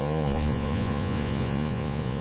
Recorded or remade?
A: remade